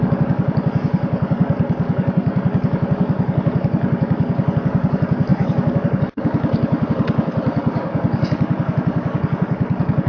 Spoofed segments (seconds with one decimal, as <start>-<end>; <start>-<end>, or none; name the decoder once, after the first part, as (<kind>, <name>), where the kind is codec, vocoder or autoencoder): 0.0-10.1 (codec, DAC)